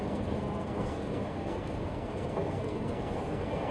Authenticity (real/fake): fake